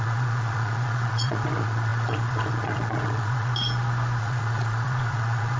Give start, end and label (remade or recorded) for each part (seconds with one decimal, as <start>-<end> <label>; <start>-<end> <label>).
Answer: 0.0-3.5 remade; 3.5-4.2 recorded; 4.2-5.6 remade